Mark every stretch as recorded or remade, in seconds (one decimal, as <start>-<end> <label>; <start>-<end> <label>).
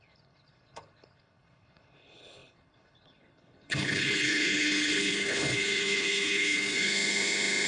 0.0-7.7 remade